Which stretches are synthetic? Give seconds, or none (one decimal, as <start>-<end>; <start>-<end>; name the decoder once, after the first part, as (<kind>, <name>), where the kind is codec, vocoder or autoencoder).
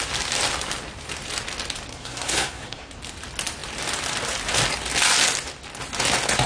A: 1.9-2.9 (codec, SNAC)